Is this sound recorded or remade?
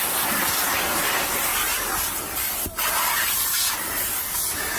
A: recorded